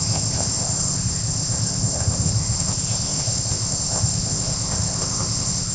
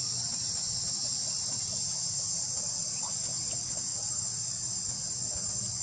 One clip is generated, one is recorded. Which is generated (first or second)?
first